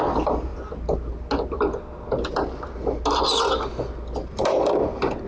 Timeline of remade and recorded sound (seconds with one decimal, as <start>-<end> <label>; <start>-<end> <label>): 0.0-5.3 recorded